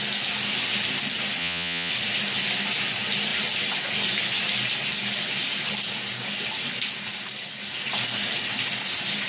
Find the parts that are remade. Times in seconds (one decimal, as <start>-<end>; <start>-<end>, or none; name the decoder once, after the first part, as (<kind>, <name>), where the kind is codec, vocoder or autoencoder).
1.4-1.9 (vocoder, Vocos)